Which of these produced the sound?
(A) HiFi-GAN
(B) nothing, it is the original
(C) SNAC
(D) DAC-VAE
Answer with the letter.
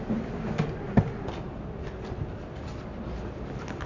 B